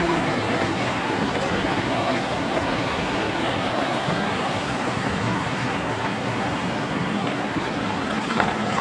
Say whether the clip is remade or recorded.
remade